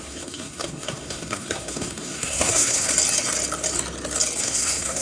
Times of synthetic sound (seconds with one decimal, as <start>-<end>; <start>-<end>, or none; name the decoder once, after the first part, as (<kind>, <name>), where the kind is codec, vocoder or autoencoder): 0.0-2.9 (codec, SNAC); 4.4-5.0